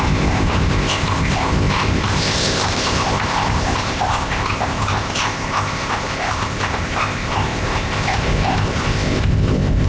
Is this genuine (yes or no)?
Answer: no